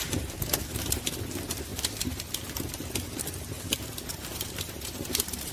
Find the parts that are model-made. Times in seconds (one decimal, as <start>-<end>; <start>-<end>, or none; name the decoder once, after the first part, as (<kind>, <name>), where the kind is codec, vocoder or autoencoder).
1.7-2.7 (vocoder, BigVGAN v2); 4.1-5.5